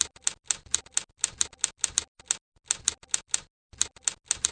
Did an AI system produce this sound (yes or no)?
no